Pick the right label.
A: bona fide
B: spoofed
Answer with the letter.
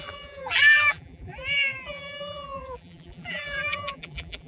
B